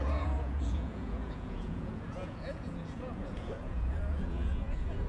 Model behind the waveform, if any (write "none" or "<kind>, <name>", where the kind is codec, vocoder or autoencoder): vocoder, Vocos